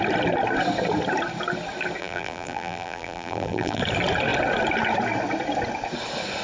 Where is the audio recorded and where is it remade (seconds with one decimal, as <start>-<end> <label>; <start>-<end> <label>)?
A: 0.0-2.0 recorded; 2.0-3.8 remade; 3.8-6.4 recorded